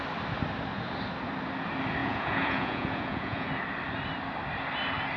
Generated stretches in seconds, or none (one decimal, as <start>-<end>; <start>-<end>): 2.0-3.5